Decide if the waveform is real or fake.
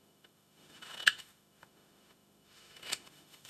fake